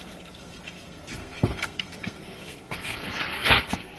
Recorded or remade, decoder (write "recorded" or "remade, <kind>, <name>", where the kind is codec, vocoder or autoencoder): remade, codec, SNAC